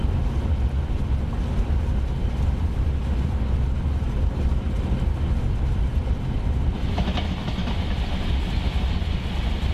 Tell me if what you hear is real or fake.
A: real